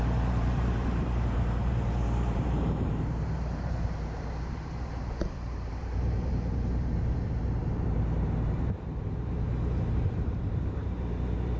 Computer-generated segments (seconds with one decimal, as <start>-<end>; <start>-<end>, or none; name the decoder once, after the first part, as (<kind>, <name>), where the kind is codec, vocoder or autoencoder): 0.0-11.6 (vocoder, BigVGAN v2)